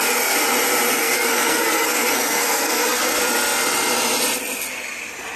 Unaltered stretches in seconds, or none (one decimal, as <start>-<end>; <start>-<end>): 0.0-0.9; 3.2-5.4